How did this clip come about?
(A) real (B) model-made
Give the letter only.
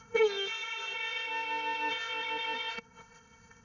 B